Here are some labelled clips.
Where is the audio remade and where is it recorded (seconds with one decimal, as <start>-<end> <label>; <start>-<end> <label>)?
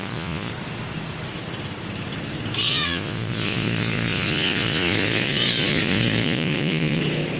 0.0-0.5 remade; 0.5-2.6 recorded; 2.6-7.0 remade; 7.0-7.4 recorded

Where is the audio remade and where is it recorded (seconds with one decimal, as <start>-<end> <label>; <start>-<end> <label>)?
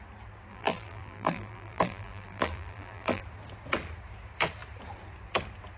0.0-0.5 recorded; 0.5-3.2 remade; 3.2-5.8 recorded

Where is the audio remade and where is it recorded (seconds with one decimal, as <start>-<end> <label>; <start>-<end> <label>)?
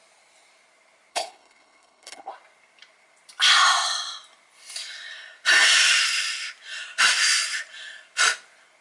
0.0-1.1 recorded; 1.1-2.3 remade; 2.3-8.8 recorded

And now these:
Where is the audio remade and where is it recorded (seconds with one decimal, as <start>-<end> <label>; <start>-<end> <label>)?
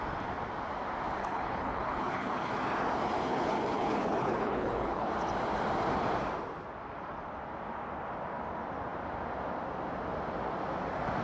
0.0-1.2 recorded; 1.2-2.5 remade; 2.5-3.3 recorded; 3.3-5.1 remade; 5.1-11.2 recorded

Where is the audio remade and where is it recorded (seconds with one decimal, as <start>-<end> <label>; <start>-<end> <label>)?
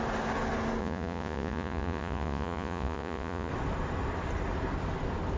0.0-0.8 recorded; 0.8-3.5 remade; 3.5-5.4 recorded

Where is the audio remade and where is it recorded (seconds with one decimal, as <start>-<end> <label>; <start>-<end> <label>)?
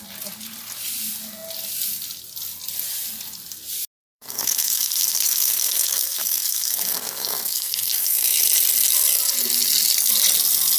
0.0-4.0 recorded; 4.0-8.4 remade; 8.4-10.8 recorded